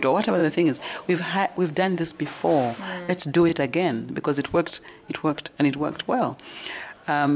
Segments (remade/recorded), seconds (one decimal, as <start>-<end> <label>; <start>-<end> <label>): 0.0-2.4 remade; 2.4-3.1 recorded; 3.1-3.5 remade; 3.5-4.1 recorded; 4.1-7.4 remade

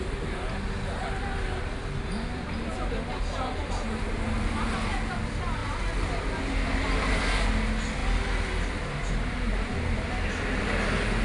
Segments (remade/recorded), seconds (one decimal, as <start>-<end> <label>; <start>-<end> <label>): 0.0-11.2 recorded